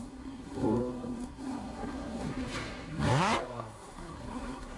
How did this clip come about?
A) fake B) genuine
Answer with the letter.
A